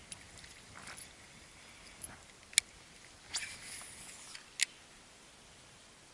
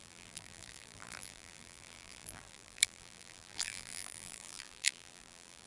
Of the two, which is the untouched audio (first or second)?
first